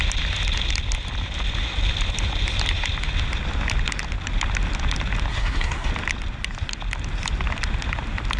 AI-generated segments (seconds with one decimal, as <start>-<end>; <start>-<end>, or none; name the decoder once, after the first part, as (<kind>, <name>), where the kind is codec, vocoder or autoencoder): 5.3-5.9 (codec, SNAC)

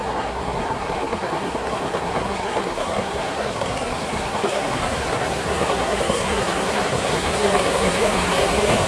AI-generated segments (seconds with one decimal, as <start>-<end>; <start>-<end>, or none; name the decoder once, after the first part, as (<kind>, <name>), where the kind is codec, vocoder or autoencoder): 0.0-8.9 (codec, SNAC)

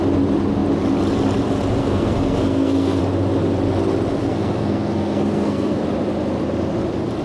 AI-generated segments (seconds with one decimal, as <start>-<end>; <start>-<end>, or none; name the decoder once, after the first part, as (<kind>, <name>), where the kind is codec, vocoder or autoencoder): 1.8-3.0 (codec, SNAC); 4.2-5.8